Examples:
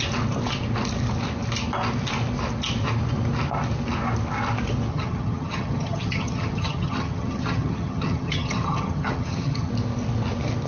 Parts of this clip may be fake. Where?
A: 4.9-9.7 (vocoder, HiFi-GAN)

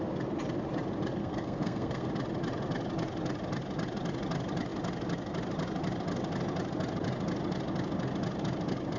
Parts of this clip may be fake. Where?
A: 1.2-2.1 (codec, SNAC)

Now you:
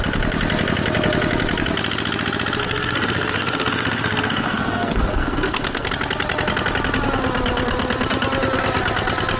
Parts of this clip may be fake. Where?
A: 2.6-5.9 (codec, SNAC)

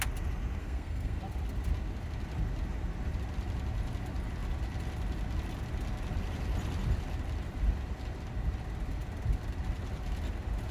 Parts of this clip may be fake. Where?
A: 0.6-1.2 (codec, SNAC)

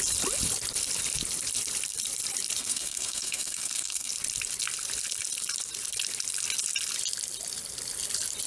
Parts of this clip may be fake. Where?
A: 2.6-4.1 (codec, SNAC)